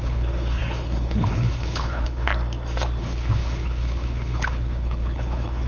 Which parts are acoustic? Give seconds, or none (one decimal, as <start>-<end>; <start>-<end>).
2.3-3.0

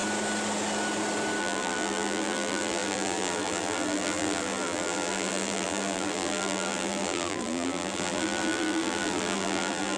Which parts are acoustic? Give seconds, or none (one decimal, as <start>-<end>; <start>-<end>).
0.0-1.4

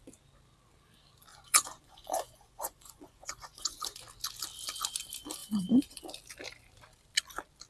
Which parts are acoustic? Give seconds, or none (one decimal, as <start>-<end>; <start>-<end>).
0.0-1.3; 4.0-5.4; 6.0-7.7

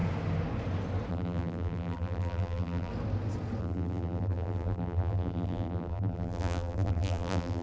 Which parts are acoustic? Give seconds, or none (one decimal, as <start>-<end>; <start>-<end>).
0.0-1.1; 2.9-3.6